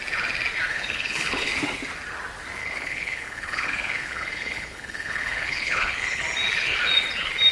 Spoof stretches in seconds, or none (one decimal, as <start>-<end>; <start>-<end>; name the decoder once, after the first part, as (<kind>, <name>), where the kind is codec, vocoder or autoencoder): 0.7-1.5 (codec, HILCodec); 2.6-6.2